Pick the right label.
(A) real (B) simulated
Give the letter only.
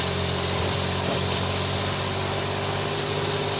A